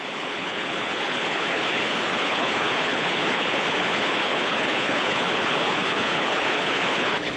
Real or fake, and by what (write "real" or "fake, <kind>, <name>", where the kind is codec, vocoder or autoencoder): fake, codec, HILCodec